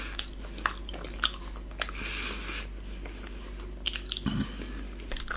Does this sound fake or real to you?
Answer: real